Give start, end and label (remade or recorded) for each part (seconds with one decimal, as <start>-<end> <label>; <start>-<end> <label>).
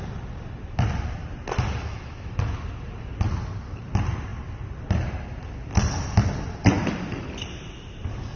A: 0.0-1.8 recorded; 1.8-2.4 remade; 2.4-8.4 recorded